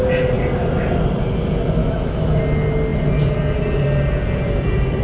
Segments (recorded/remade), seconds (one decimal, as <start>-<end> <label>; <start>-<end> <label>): 0.0-1.8 recorded; 1.8-2.4 remade; 2.4-5.0 recorded